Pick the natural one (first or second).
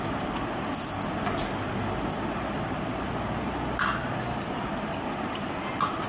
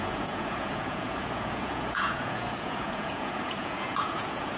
first